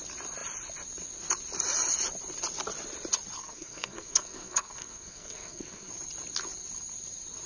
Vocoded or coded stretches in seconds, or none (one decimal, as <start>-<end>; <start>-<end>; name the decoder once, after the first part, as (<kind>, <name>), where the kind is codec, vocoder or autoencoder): 3.4-5.9 (codec, SNAC)